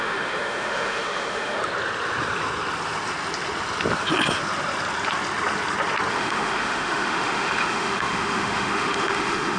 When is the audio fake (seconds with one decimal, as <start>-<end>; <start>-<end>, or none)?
0.0-1.6; 6.1-9.6